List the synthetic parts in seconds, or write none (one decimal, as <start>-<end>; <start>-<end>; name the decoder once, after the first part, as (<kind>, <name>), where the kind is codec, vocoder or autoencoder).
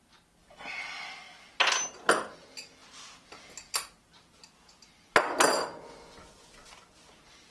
none